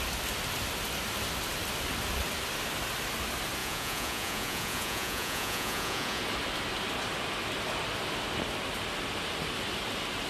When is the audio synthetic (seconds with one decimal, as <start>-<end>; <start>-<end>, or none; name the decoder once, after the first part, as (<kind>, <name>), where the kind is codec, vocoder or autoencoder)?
3.6-6.2 (vocoder, Vocos)